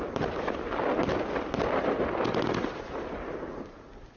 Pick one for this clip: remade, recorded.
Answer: recorded